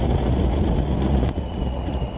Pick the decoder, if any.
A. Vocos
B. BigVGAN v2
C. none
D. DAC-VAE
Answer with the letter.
A